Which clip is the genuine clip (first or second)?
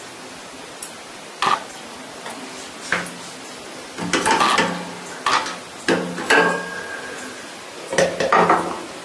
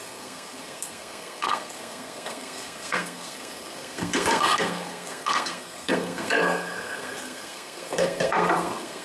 first